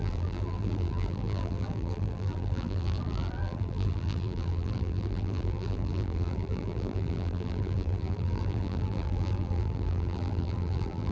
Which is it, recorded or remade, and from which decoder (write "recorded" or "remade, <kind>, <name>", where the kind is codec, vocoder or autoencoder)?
remade, vocoder, BigVGAN v2